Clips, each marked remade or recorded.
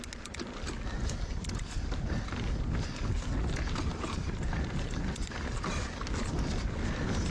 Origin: recorded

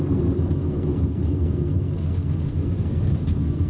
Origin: remade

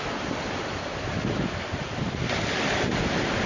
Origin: recorded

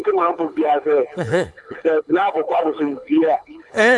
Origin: remade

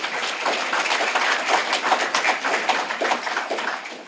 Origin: recorded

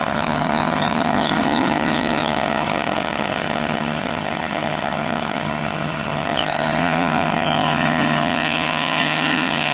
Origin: remade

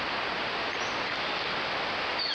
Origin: recorded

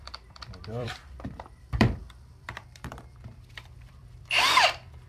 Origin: remade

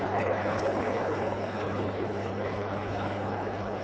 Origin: remade